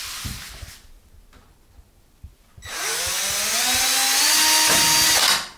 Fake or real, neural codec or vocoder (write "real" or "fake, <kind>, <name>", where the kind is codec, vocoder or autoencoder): real